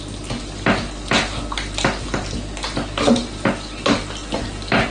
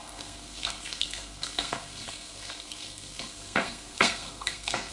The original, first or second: first